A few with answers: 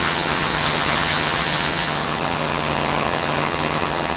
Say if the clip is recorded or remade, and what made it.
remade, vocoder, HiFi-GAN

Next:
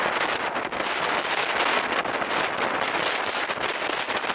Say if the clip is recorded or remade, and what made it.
recorded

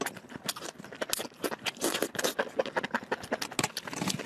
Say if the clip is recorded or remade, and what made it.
recorded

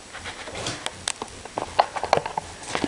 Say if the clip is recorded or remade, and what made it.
recorded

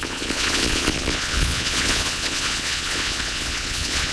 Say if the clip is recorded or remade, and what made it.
remade, vocoder, Vocos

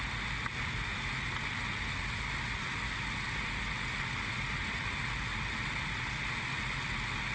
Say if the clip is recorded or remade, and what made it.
recorded